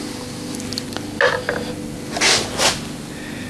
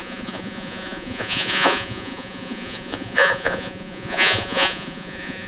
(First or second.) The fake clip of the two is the second